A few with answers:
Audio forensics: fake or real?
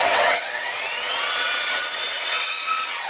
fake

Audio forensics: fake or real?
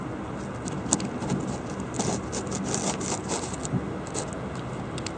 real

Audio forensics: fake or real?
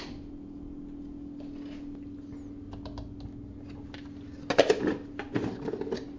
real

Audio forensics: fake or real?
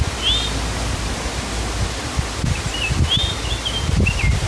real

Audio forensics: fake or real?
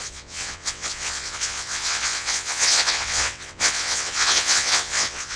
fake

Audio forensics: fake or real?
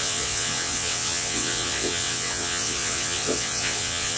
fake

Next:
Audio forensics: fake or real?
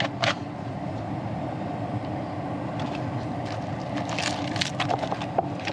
real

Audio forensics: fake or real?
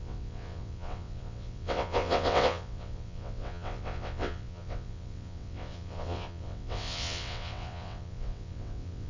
fake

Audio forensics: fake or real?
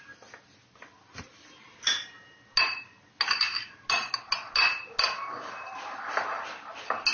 real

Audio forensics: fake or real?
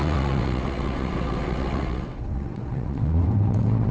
fake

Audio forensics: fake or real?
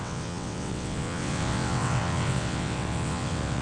fake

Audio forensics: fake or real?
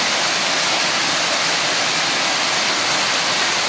real